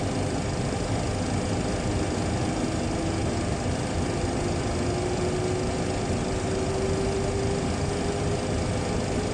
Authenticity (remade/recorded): recorded